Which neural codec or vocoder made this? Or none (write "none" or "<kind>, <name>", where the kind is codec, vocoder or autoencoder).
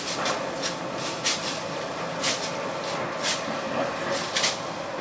none